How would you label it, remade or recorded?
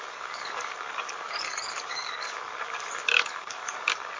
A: remade